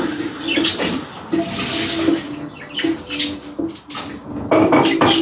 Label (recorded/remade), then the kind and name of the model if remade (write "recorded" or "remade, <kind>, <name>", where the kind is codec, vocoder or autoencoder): recorded